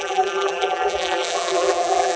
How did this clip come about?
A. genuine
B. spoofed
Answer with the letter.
B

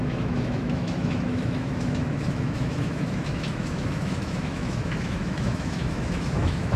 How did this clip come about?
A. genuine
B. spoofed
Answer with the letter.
B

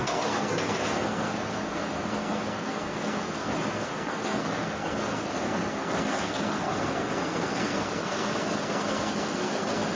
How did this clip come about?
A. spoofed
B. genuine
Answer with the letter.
A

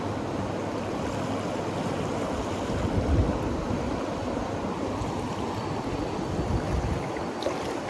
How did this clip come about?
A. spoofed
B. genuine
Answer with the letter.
B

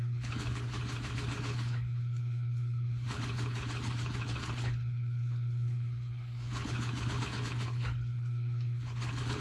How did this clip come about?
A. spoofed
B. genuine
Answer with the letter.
A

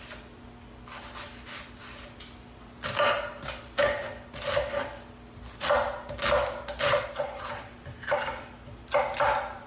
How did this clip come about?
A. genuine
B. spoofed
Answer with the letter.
A